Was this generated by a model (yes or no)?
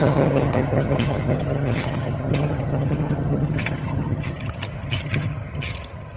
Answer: yes